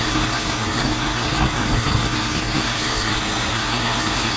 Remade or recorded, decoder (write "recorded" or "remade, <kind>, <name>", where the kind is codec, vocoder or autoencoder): remade, codec, SNAC